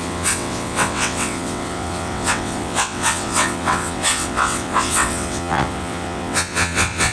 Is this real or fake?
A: fake